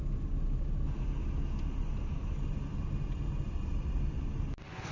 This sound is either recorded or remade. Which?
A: recorded